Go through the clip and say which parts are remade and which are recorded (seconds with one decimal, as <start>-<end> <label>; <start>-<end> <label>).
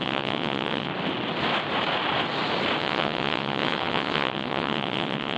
0.0-0.9 remade; 0.9-2.8 recorded; 2.8-5.4 remade